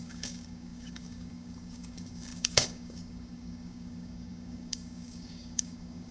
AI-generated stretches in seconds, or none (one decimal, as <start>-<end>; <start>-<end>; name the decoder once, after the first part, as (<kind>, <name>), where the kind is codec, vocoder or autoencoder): 0.0-6.1 (codec, DAC)